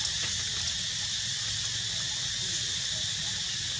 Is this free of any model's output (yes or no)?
yes